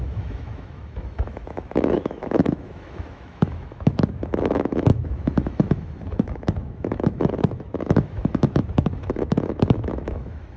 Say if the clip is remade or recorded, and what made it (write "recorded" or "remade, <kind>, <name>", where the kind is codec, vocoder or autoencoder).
remade, autoencoder, DAC-VAE